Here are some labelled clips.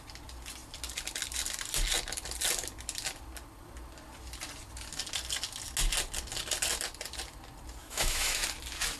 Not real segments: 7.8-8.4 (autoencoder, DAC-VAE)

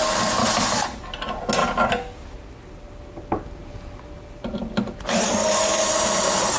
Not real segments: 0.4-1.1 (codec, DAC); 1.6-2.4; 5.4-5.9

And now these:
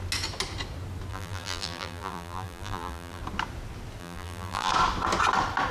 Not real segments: 1.1-3.2 (vocoder, BigVGAN v2); 4.0-4.7

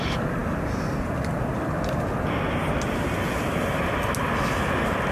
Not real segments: none

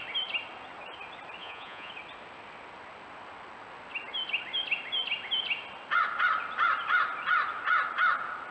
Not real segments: 1.4-1.9 (vocoder, Vocos)

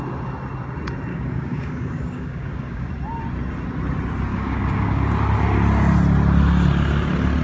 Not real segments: 1.1-2.9 (codec, DAC); 4.3-5.0

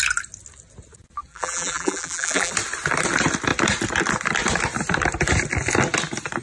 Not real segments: 1.3-2.5 (vocoder, BigVGAN v2)